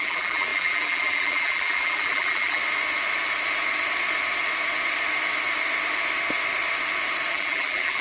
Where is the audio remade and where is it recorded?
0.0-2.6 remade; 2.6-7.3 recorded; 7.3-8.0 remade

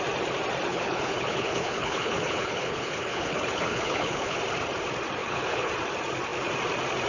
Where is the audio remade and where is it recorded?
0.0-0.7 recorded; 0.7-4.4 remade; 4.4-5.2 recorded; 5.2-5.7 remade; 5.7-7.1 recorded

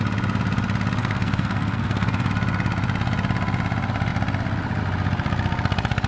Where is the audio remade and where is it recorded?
0.0-1.0 recorded; 1.0-2.3 remade; 2.3-6.1 recorded